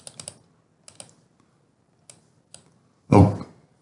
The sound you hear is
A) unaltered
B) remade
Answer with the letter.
A